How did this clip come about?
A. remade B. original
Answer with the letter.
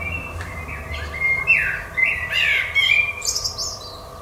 B